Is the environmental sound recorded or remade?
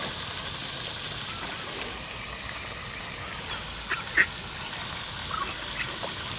recorded